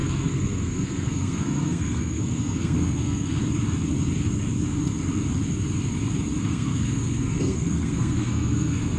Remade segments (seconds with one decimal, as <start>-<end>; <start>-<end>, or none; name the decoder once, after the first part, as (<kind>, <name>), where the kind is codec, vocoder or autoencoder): 0.0-3.4 (codec, SNAC); 6.4-9.0

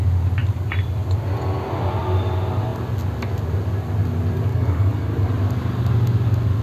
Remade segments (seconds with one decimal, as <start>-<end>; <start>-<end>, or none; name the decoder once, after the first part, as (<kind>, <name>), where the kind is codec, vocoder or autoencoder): 4.5-5.3 (codec, DAC)

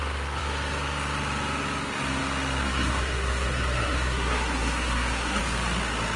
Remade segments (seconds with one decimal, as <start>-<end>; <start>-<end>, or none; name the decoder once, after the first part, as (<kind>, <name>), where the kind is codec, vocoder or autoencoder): 2.6-5.4 (codec, SNAC)

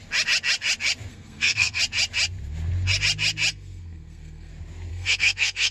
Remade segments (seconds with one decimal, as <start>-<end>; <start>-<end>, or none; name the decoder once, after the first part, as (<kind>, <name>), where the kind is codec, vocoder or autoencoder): 1.1-1.8 (codec, SNAC); 3.5-4.5; 4.9-5.7

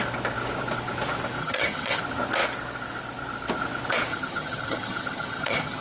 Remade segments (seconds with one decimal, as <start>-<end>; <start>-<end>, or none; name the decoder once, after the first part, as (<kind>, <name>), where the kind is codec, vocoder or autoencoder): 1.4-2.0 (vocoder, HiFi-GAN); 4.1-5.8